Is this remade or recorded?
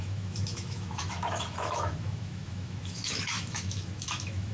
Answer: remade